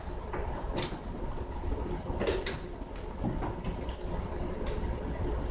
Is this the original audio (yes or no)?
yes